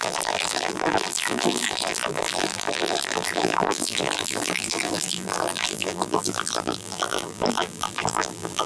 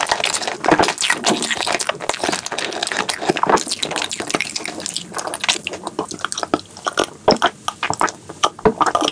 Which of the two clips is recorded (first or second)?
second